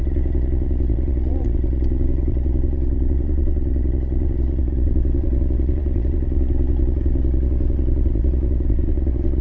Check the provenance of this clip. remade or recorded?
remade